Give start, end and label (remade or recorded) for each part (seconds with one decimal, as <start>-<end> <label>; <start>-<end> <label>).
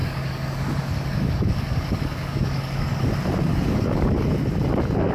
0.0-3.1 remade; 3.1-3.5 recorded; 3.5-4.3 remade; 4.3-5.1 recorded